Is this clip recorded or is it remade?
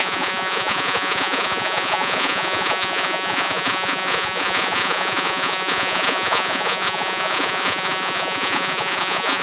remade